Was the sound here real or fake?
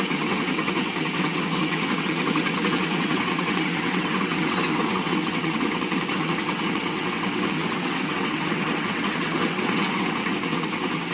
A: fake